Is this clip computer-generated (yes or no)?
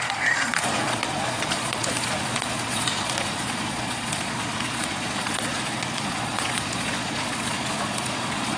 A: yes